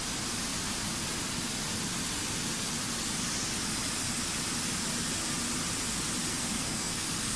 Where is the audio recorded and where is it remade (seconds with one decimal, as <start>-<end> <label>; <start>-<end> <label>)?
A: 0.0-6.3 recorded; 6.3-7.4 remade